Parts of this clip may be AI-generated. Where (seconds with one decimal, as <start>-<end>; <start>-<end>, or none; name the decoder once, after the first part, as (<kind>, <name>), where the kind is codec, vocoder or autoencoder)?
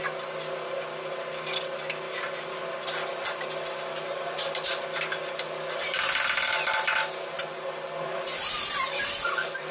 none